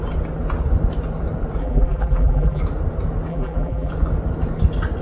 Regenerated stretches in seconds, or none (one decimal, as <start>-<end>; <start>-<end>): 1.6-2.6; 3.3-3.9